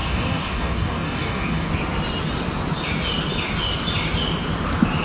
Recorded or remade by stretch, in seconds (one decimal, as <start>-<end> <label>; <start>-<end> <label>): 0.0-1.7 remade; 1.7-5.0 recorded